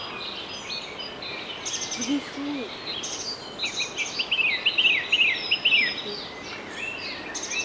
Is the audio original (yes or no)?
yes